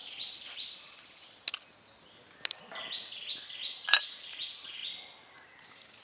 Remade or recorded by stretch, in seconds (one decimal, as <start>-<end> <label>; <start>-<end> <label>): 0.0-3.6 recorded; 3.6-4.8 remade; 4.8-6.0 recorded